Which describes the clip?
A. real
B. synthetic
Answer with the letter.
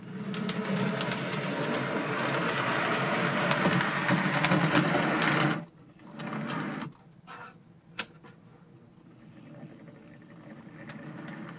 A